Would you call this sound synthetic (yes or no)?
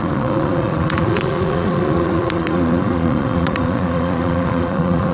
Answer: yes